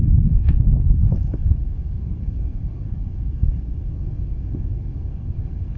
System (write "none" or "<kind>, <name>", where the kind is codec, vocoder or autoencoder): codec, SNAC